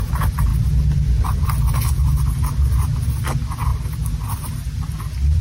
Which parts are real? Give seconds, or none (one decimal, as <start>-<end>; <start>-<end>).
0.0-5.4